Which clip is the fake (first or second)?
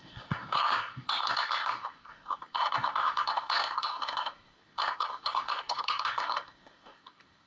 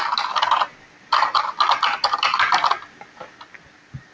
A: first